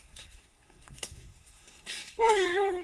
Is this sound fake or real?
fake